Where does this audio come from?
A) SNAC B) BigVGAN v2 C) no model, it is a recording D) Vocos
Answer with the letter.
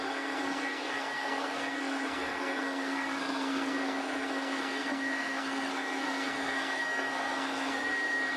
A